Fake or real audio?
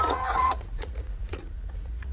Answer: fake